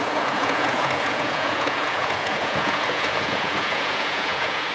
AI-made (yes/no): yes